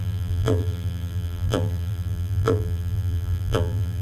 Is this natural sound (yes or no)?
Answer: no